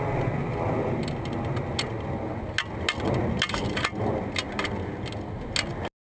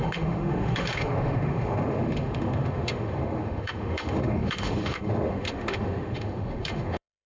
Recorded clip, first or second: first